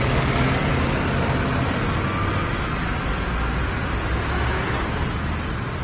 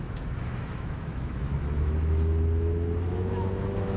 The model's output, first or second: second